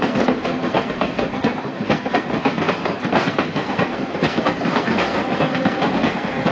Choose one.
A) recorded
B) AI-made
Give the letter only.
B